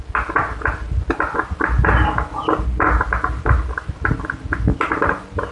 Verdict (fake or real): real